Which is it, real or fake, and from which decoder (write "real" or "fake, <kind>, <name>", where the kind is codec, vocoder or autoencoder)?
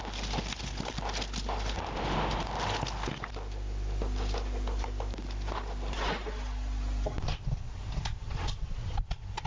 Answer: real